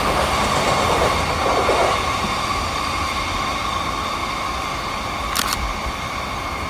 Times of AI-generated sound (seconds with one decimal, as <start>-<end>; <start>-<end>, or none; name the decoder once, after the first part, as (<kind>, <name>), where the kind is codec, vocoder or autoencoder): none